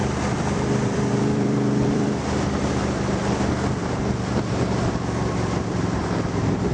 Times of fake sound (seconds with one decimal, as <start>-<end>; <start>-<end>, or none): 0.0-6.7